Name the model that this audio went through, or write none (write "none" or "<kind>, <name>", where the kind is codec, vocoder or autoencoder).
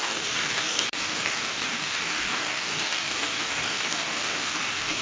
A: codec, DAC